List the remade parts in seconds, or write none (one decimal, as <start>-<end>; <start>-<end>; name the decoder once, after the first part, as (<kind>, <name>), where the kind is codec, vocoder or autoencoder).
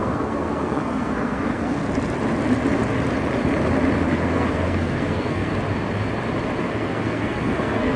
0.0-1.8 (codec, SNAC); 4.1-5.5; 6.6-8.0